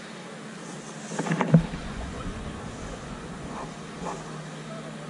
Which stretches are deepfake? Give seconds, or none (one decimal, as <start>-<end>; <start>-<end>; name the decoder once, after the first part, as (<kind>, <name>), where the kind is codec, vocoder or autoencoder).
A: 1.8-3.7 (vocoder, Vocos)